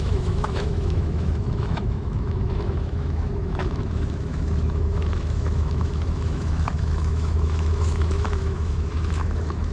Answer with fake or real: fake